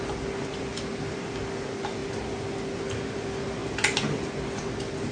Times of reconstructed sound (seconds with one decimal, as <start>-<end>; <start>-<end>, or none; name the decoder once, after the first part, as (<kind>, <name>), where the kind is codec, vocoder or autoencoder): none